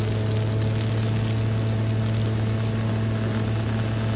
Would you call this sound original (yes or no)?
yes